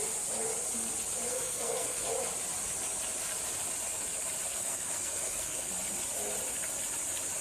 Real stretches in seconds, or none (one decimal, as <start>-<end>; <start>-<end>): 0.0-1.3; 2.1-4.5; 5.7-7.4